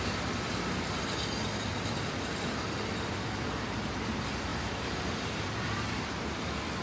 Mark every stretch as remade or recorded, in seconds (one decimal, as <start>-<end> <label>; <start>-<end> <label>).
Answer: 0.0-4.5 recorded; 4.5-6.3 remade; 6.3-6.8 recorded